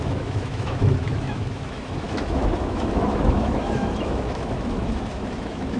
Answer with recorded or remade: remade